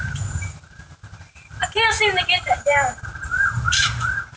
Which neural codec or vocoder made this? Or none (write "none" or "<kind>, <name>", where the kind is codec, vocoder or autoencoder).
vocoder, BigVGAN v2